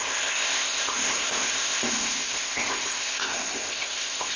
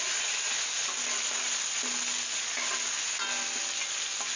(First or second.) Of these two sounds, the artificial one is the first